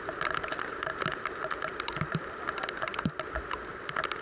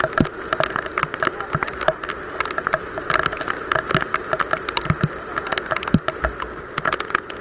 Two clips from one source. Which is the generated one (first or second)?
first